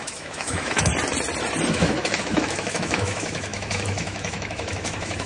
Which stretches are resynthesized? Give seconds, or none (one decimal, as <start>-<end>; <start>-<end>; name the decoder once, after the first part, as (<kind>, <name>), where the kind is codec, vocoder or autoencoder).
0.0-0.9 (autoencoder, DAC-VAE); 1.7-5.3